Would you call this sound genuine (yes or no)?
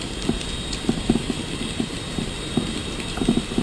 no